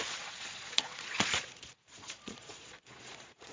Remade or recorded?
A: remade